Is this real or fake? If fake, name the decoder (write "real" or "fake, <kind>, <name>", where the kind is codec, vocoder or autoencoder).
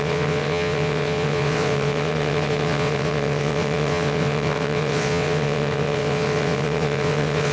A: fake, vocoder, WaveNeXt